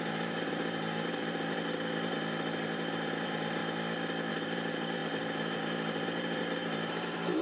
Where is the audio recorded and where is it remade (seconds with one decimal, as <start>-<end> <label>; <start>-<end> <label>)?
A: 0.0-3.6 remade; 3.6-4.3 recorded; 4.3-7.4 remade